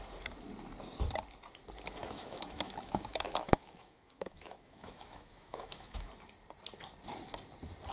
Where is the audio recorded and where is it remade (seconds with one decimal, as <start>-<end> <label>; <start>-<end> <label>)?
0.0-2.0 recorded; 2.0-6.1 remade; 6.1-7.9 recorded